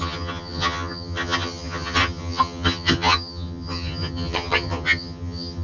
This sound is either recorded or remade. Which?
remade